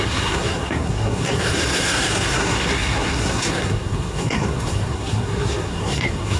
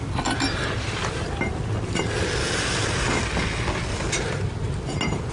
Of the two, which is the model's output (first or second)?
first